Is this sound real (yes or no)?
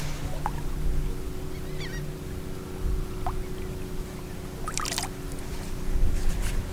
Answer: yes